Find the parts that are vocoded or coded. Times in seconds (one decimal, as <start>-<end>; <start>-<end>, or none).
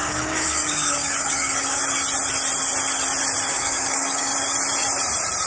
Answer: 0.0-1.8; 3.5-4.3